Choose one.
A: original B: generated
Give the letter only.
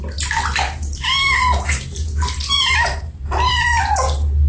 A